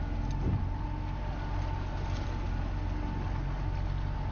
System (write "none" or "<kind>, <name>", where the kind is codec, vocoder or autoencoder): none